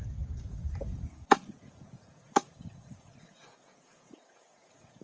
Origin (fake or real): fake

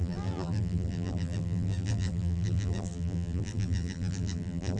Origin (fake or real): fake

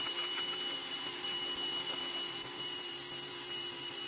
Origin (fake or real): fake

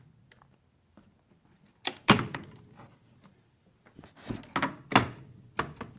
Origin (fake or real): real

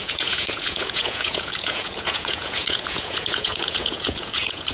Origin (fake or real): fake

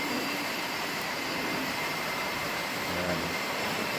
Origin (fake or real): fake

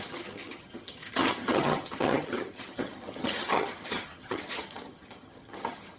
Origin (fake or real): fake